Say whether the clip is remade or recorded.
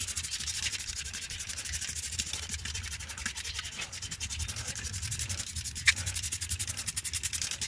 recorded